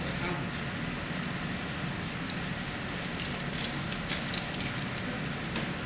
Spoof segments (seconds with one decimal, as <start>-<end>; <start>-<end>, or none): none